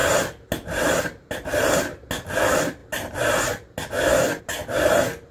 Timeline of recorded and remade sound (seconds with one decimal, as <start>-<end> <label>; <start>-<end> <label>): 0.0-5.3 recorded